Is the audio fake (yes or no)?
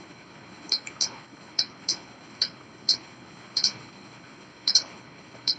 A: yes